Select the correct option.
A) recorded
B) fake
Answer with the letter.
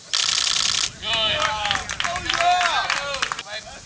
A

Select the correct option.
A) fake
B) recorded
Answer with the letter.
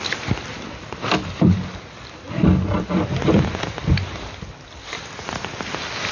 B